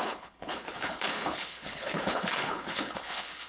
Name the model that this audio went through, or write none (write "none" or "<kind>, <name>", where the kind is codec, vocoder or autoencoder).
codec, HILCodec